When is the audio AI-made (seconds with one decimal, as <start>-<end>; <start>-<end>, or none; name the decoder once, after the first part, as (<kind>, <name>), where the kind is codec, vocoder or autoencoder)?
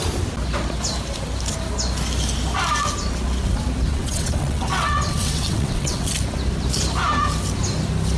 3.9-6.1 (vocoder, WaveNeXt)